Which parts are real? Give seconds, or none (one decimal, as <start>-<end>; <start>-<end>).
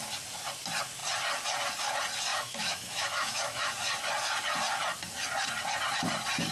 0.0-2.3; 3.7-6.5